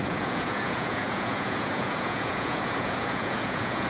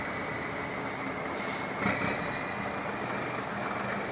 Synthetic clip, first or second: first